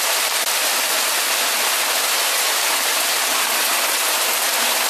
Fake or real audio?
real